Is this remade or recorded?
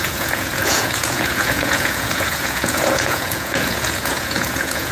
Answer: remade